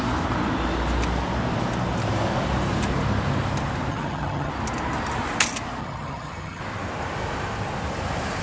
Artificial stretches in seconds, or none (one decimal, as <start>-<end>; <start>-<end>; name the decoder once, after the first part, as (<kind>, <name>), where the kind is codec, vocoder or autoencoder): 3.9-4.5 (vocoder, HiFi-GAN); 5.8-6.6

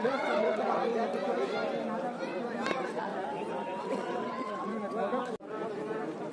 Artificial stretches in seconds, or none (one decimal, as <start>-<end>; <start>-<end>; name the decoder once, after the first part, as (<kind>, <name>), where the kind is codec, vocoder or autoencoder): 0.0-0.9 (vocoder, WaveNeXt); 2.7-3.1; 3.8-4.7

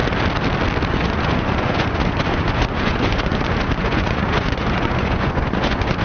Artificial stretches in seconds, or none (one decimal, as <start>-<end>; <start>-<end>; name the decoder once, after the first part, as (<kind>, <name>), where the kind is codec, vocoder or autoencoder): 0.9-6.0 (vocoder, Vocos)

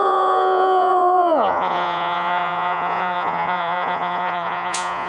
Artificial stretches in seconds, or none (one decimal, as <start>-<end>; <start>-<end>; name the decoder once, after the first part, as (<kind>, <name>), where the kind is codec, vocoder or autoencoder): 0.0-5.1 (vocoder, Vocos)

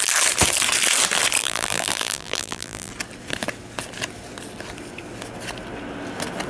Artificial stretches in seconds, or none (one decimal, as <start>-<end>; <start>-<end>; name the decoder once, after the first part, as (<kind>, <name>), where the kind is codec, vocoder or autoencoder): 1.4-2.9 (vocoder, BigVGAN v2)